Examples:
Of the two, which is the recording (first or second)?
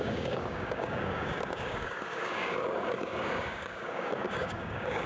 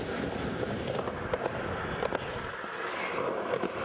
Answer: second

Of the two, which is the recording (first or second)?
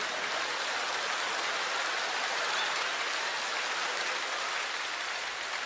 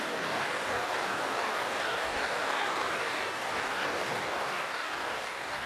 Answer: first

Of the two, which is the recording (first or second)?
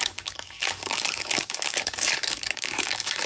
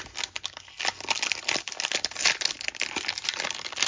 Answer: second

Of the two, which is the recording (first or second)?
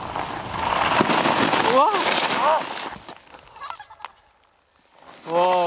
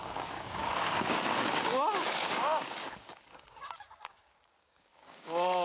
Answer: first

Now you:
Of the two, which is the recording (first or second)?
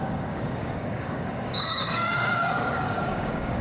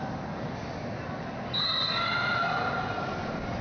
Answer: second